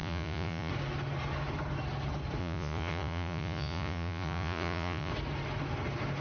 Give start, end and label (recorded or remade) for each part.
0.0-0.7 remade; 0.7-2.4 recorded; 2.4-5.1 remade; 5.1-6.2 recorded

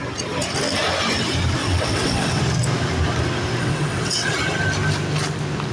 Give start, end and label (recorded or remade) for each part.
0.0-1.6 recorded; 1.6-2.4 remade; 2.4-3.6 recorded; 3.6-4.3 remade; 4.3-5.7 recorded

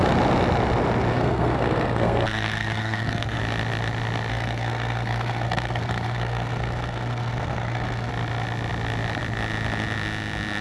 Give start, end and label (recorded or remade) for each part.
0.0-1.1 recorded; 1.1-3.4 remade; 3.4-4.3 recorded; 4.3-8.1 remade; 8.1-10.6 recorded

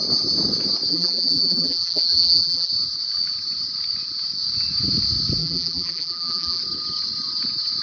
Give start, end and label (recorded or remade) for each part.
0.0-0.9 recorded; 0.9-2.7 remade; 2.7-5.4 recorded; 5.4-6.6 remade; 6.6-7.8 recorded

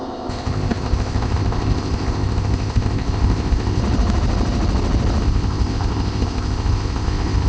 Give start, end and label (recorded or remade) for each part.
0.0-3.8 remade; 3.8-5.2 recorded; 5.2-7.5 remade